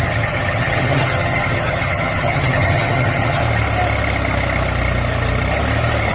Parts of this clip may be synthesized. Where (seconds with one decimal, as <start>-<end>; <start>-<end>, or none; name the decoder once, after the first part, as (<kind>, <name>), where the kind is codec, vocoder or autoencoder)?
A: 0.0-3.4 (vocoder, HiFi-GAN)